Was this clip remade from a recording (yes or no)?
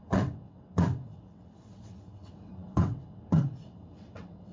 yes